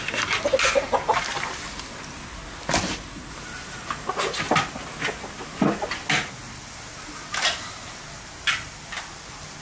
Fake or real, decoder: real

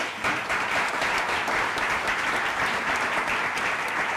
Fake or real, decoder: fake, vocoder, BigVGAN v2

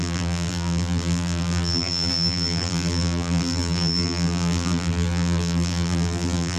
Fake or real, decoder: fake, vocoder, BigVGAN v2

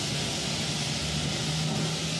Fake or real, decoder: real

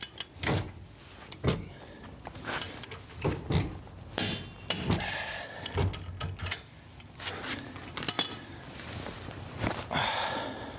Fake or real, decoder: real